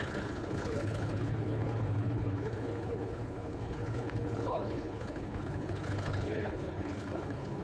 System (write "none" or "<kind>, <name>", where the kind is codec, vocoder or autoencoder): codec, HILCodec